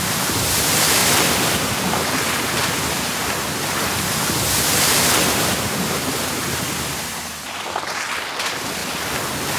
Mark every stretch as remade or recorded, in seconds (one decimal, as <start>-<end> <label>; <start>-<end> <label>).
0.0-8.8 remade; 8.8-9.6 recorded